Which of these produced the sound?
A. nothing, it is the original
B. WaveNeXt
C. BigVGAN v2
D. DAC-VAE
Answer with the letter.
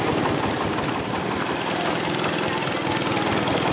A